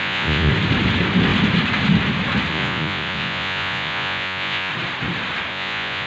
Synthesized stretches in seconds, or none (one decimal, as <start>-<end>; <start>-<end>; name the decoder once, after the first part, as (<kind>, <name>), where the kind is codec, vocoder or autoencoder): 0.0-0.5 (vocoder, Vocos); 2.5-4.7; 5.5-6.1